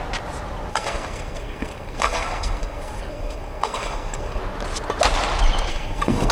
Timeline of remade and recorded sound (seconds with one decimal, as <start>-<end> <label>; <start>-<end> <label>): 0.0-0.7 recorded; 0.7-4.4 remade; 4.4-5.7 recorded; 5.7-6.3 remade